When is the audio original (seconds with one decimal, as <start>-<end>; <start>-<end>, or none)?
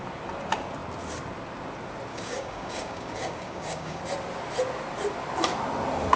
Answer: 0.0-2.1; 4.0-6.2